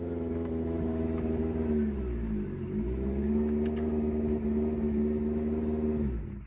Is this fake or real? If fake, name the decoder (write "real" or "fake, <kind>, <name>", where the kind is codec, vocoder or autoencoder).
fake, autoencoder, DAC-VAE